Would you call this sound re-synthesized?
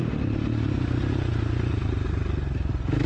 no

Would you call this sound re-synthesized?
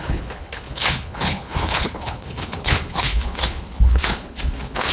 yes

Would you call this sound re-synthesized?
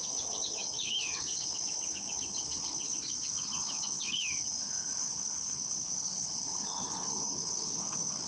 yes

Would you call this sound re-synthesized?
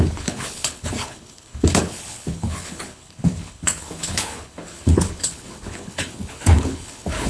yes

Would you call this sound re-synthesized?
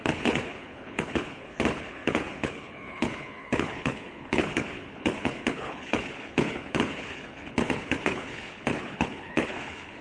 yes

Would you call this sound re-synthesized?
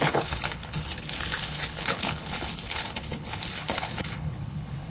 yes